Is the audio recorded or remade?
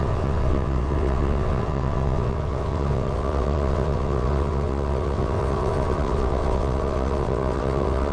remade